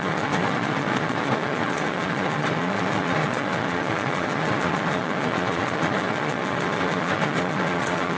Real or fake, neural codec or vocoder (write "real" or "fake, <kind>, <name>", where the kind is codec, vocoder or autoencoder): fake, vocoder, Vocos